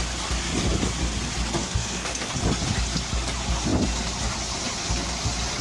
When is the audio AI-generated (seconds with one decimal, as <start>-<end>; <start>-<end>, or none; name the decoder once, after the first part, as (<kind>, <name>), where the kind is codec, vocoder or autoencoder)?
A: 1.6-2.3 (codec, SNAC)